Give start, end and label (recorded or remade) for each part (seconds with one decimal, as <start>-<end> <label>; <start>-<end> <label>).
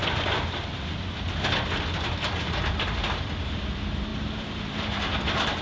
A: 0.0-3.4 recorded; 3.4-5.6 remade